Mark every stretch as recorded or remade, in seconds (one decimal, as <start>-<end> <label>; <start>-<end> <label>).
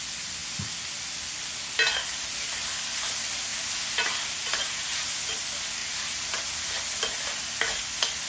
0.0-3.5 recorded; 3.5-5.1 remade; 5.1-5.8 recorded; 5.8-6.8 remade; 6.8-8.3 recorded